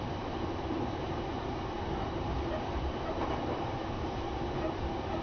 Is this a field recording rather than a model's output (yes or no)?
no